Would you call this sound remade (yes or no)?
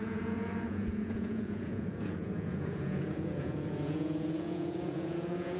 yes